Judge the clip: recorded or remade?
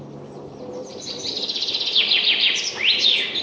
recorded